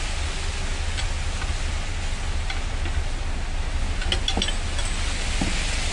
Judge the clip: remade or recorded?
recorded